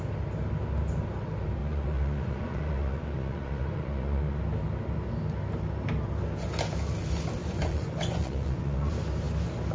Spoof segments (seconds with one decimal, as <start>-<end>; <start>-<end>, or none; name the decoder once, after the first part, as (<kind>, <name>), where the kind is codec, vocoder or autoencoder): 1.6-4.4 (vocoder, Vocos); 7.4-8.9